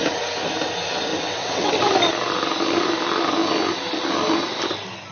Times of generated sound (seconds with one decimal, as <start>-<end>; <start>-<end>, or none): 1.1-1.7